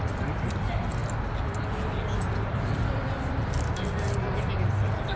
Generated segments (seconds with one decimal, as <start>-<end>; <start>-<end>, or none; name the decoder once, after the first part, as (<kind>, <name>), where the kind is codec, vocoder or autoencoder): none